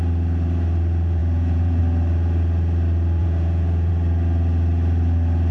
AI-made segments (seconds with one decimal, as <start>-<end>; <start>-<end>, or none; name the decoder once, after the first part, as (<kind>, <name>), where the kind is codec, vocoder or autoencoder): 1.2-1.8 (vocoder, Vocos); 3.2-3.9